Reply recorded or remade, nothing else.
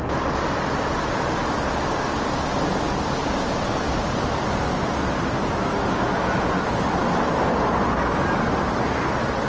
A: recorded